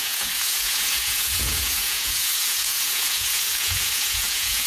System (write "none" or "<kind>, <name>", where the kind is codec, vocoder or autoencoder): vocoder, Vocos